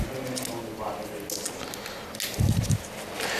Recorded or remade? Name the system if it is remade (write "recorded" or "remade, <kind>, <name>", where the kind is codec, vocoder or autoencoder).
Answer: recorded